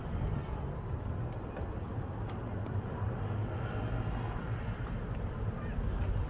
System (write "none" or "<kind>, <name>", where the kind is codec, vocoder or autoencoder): none